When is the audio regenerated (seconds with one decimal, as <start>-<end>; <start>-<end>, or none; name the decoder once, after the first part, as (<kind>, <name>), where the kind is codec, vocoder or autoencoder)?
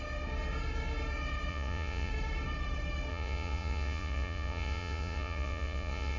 1.5-2.1 (vocoder, Vocos); 3.1-6.2